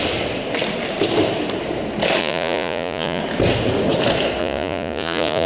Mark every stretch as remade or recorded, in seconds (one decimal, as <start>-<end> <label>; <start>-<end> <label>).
0.0-2.2 recorded; 2.2-3.2 remade; 3.2-4.4 recorded; 4.4-5.5 remade